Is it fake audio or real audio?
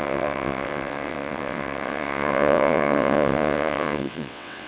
fake